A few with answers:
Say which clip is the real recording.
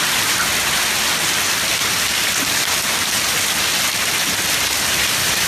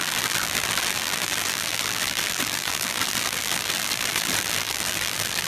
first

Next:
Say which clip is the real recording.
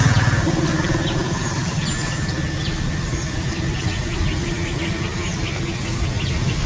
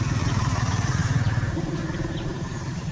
first